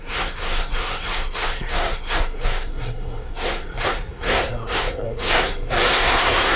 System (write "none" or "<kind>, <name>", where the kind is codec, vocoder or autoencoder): codec, SNAC